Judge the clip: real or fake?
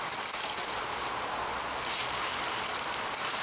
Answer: real